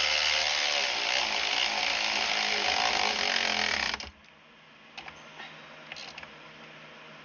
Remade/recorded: recorded